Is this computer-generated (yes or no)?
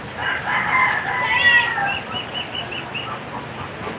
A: no